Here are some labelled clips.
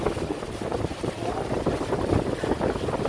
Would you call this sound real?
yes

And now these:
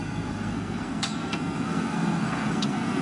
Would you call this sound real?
no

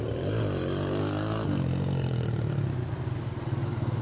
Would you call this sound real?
yes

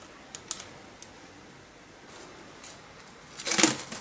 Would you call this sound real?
yes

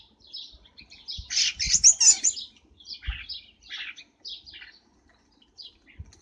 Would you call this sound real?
yes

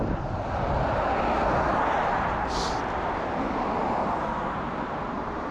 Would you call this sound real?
yes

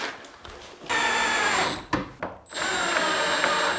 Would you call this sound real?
yes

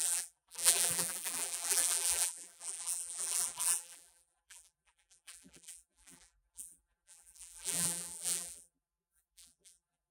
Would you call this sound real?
no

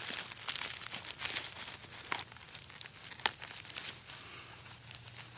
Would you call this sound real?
yes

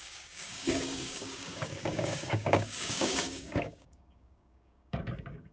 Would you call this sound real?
no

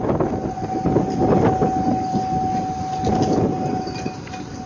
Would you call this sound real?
yes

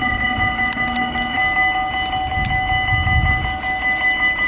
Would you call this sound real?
yes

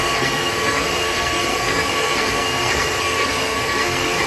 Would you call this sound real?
no